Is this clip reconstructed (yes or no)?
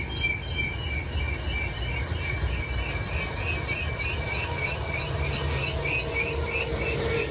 no